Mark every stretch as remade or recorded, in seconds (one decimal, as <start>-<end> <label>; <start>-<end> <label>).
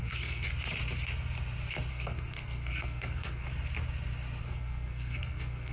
0.0-0.5 remade; 0.5-1.9 recorded; 1.9-3.5 remade; 3.5-4.4 recorded; 4.4-5.7 remade